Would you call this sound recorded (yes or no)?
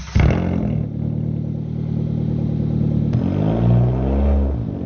yes